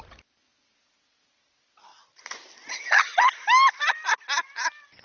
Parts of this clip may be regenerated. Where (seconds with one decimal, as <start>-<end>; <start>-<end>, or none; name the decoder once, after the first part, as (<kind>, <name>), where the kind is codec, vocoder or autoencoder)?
none